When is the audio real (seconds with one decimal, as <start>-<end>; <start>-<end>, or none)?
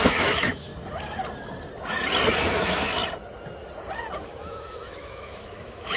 0.7-2.5; 3.0-4.2